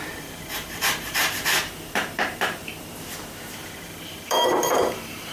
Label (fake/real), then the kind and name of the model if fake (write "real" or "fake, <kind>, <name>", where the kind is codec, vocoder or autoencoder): fake, vocoder, BigVGAN v2